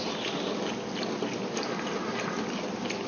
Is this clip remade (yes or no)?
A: no